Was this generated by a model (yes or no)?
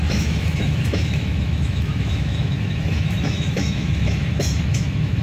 yes